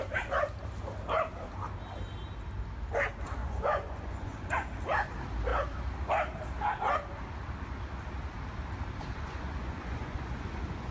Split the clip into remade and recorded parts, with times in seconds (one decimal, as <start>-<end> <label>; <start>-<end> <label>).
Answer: 0.0-3.4 recorded; 3.4-4.7 remade; 4.7-9.1 recorded; 9.1-10.9 remade